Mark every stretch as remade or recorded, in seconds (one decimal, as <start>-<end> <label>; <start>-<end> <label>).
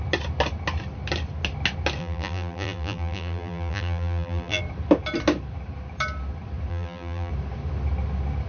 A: 0.0-2.0 recorded; 2.0-4.6 remade; 4.6-6.7 recorded; 6.7-7.3 remade; 7.3-8.5 recorded